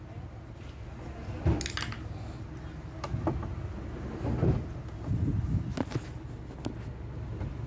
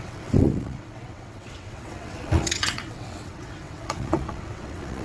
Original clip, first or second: first